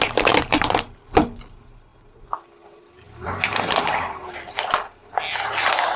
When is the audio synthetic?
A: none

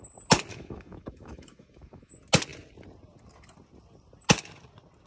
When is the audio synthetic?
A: 0.5-2.1

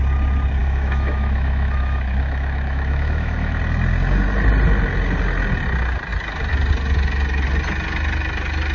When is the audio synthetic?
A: 0.6-3.6